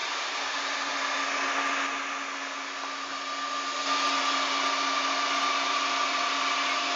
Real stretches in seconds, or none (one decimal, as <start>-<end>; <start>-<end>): 0.0-7.0